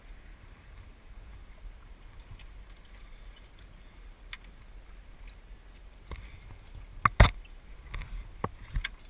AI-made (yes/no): no